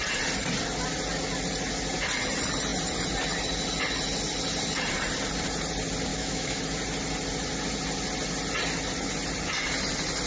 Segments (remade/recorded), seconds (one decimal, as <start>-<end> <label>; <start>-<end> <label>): 0.0-6.1 recorded; 6.1-6.6 remade; 6.6-10.3 recorded